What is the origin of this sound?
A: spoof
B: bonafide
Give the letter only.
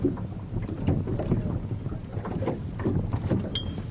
B